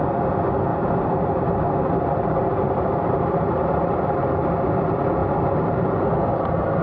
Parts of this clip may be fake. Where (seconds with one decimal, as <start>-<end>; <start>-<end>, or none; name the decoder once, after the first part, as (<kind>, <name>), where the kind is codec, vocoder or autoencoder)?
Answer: 0.7-4.3 (vocoder, BigVGAN v2); 5.2-5.8